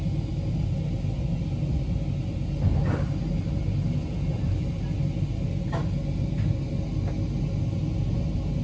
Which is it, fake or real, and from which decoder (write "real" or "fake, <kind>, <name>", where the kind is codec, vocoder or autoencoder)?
real